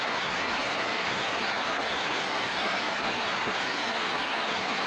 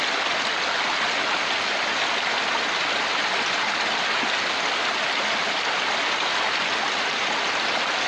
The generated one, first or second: first